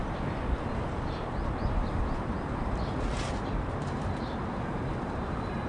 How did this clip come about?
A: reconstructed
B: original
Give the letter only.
A